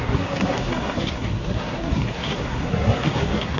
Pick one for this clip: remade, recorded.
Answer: remade